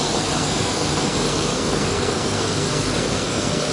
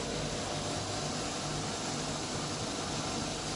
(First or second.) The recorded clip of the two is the second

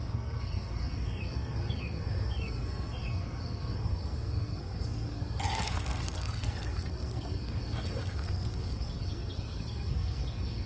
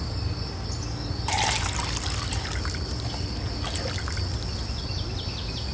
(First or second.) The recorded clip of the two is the second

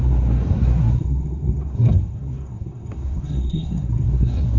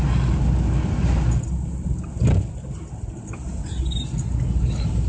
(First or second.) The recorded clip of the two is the second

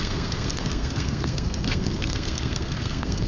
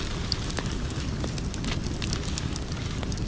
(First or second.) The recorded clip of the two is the second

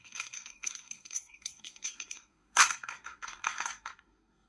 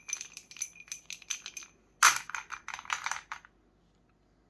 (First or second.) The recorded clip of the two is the second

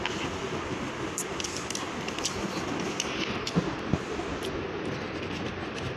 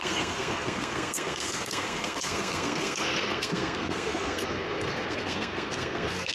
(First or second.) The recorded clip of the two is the first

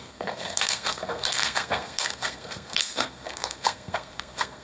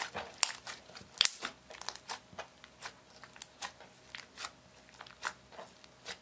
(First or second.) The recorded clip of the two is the second